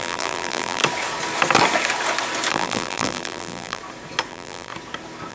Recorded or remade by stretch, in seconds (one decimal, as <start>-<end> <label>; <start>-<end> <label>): 0.0-0.8 remade; 0.8-2.5 recorded; 2.5-3.8 remade; 3.8-4.3 recorded; 4.3-4.7 remade; 4.7-5.3 recorded